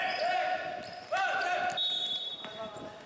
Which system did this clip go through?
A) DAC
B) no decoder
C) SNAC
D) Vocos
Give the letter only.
B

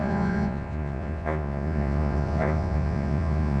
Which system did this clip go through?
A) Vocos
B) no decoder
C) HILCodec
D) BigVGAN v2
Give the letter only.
A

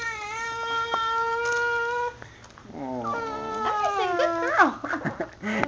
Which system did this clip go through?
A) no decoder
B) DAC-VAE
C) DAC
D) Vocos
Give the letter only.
A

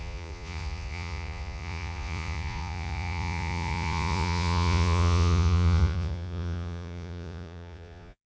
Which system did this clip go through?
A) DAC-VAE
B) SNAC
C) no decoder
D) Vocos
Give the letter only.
D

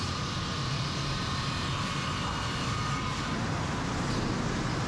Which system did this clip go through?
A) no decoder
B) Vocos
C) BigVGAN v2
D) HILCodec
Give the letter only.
A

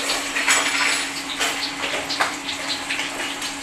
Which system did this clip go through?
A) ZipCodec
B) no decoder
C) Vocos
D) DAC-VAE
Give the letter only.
B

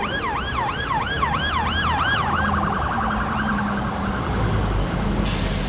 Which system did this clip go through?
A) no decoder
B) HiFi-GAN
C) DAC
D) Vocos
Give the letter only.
A